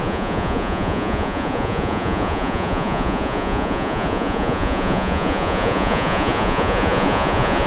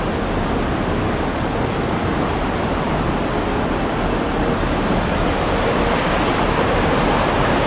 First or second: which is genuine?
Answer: second